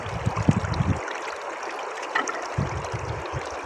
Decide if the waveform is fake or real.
real